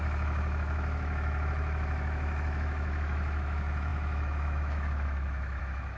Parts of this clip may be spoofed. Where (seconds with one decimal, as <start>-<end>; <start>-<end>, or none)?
0.0-6.0